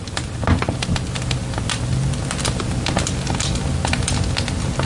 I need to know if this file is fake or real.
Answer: real